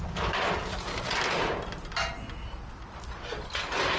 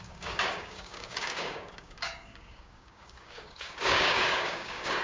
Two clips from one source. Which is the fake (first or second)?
second